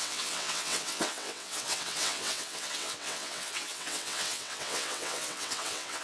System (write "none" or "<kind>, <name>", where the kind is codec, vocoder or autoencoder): vocoder, WaveNeXt